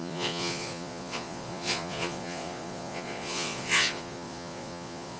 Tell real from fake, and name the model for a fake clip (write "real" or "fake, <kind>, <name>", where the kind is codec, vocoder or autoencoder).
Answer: fake, vocoder, Vocos